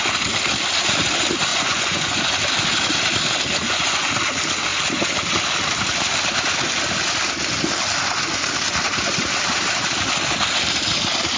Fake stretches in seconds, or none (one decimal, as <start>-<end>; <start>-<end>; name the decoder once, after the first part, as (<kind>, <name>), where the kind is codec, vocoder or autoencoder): 1.5-2.2 (vocoder, Vocos); 3.6-4.1